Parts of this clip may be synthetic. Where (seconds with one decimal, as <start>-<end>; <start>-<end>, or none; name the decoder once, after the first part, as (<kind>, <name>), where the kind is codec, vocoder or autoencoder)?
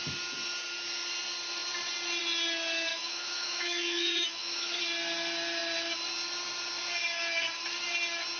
2.9-4.8 (autoencoder, DAC-VAE)